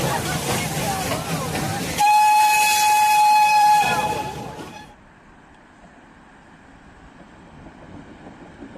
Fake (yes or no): yes